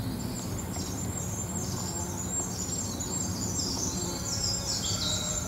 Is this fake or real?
real